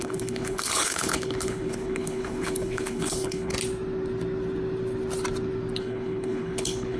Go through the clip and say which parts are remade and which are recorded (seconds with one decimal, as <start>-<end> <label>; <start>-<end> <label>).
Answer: 0.0-3.5 remade; 3.5-5.8 recorded; 5.8-7.0 remade